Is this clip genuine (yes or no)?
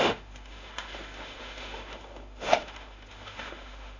no